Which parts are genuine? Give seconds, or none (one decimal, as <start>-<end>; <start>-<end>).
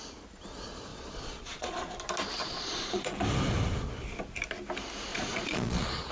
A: 0.0-0.9; 1.9-2.4; 3.1-5.1